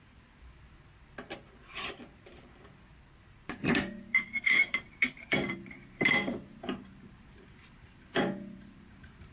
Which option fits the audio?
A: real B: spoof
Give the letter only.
B